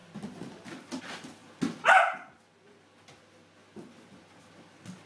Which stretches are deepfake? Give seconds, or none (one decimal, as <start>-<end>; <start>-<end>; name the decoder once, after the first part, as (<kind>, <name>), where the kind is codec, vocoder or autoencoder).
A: none